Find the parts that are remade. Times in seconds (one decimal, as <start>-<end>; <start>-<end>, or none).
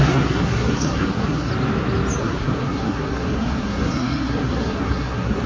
0.0-1.5; 2.2-5.5